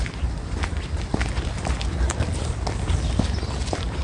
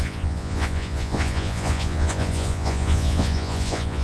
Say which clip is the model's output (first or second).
second